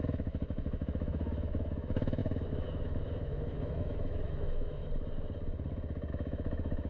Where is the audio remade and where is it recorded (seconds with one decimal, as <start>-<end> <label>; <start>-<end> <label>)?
0.0-4.8 remade; 4.8-6.1 recorded; 6.1-6.9 remade